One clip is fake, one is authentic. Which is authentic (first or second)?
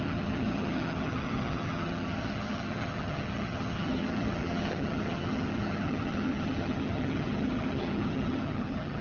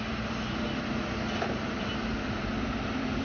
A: second